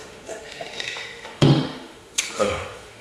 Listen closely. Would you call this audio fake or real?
fake